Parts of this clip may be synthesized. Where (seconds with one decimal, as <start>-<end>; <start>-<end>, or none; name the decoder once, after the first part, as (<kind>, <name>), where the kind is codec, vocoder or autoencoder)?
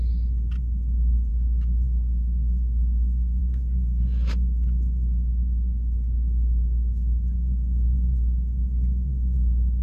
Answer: 1.3-3.4 (codec, DAC)